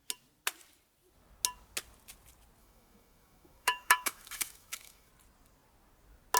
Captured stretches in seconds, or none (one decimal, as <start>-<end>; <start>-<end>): 0.0-2.6; 5.1-6.4